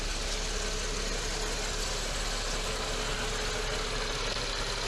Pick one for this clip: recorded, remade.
recorded